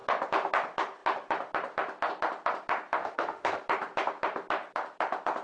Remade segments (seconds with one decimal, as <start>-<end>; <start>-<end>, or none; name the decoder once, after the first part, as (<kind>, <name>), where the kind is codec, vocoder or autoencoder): 3.0-3.6 (autoencoder, DAC-VAE)